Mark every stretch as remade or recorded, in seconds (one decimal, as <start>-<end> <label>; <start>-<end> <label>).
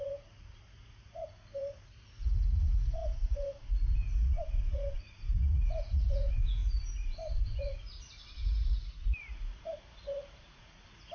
0.0-11.1 remade